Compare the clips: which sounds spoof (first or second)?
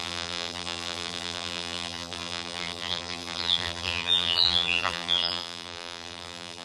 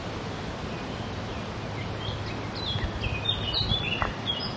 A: first